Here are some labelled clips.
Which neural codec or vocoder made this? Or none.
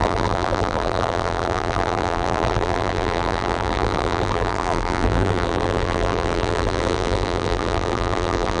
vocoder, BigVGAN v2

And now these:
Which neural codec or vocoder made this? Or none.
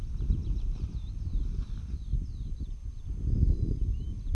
none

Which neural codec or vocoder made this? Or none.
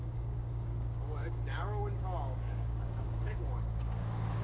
codec, DAC